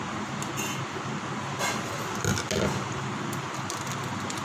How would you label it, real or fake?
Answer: real